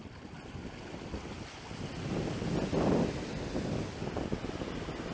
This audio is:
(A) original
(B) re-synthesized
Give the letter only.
A